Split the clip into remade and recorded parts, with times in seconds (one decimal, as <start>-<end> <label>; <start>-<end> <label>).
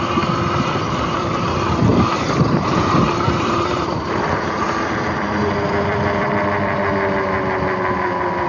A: 0.0-1.9 recorded; 1.9-6.3 remade; 6.3-8.5 recorded